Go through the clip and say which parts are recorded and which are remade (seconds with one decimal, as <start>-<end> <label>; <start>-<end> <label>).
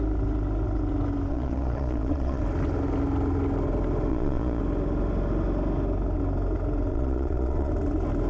0.0-1.3 recorded; 1.3-2.4 remade; 2.4-4.1 recorded; 4.1-4.6 remade; 4.6-6.9 recorded; 6.9-7.7 remade; 7.7-8.3 recorded